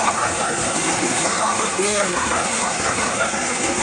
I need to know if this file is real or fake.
fake